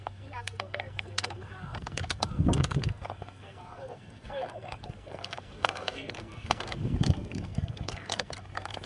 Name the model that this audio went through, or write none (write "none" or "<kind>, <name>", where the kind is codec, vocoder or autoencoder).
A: codec, SNAC